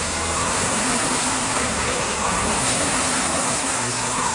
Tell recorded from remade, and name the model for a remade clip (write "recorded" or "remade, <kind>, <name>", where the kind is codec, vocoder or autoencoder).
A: remade, codec, SNAC